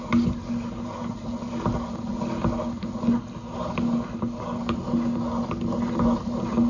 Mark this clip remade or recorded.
recorded